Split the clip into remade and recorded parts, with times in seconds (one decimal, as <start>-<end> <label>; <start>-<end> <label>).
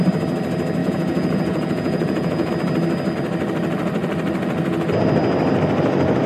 0.0-0.8 recorded; 0.8-2.5 remade; 2.5-6.3 recorded